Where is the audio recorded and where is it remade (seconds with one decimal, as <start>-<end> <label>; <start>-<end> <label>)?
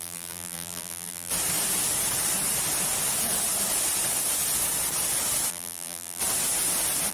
0.0-1.3 remade; 1.3-5.5 recorded; 5.5-6.2 remade; 6.2-7.1 recorded